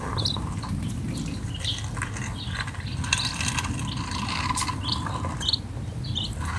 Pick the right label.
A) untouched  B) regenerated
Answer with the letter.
A